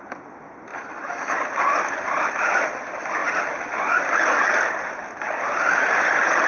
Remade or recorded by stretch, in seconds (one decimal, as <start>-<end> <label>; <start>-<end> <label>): 0.0-6.5 recorded